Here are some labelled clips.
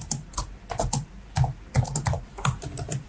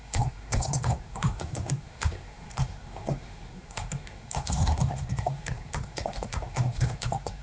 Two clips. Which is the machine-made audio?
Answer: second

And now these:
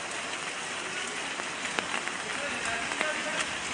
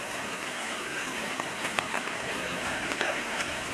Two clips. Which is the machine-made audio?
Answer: second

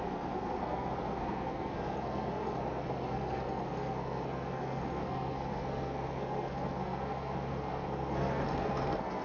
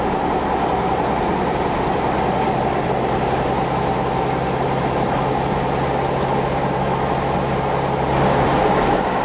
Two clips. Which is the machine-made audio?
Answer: first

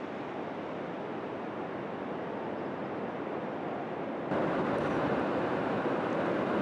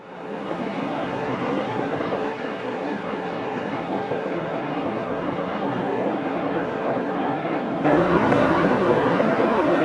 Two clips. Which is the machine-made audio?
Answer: second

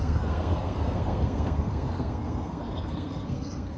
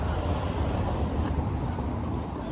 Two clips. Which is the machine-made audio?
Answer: first